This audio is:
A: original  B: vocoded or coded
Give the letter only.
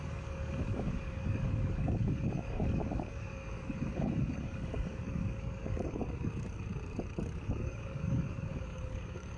B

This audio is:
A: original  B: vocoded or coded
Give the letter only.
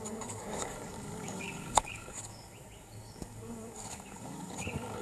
B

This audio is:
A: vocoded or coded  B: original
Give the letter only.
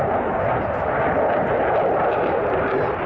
B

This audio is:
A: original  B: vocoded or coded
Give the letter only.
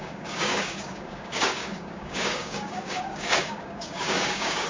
B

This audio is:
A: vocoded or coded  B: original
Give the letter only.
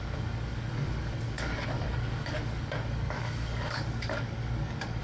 A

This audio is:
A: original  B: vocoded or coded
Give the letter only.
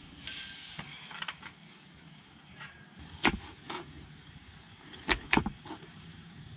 B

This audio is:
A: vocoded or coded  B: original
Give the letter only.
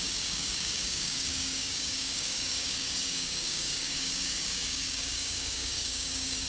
A